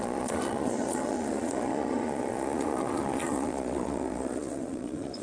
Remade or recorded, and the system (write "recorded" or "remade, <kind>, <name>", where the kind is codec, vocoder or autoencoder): remade, vocoder, Vocos